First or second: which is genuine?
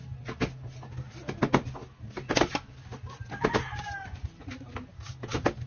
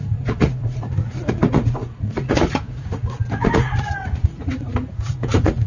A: first